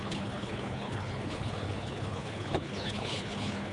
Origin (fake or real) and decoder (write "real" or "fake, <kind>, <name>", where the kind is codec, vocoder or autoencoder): fake, codec, HILCodec